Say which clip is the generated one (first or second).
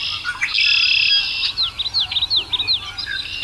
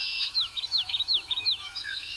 second